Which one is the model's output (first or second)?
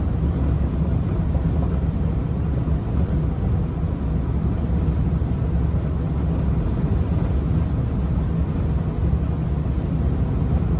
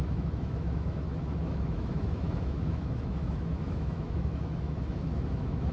second